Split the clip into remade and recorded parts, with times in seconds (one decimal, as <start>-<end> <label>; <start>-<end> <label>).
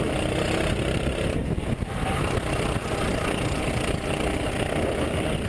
0.0-5.5 recorded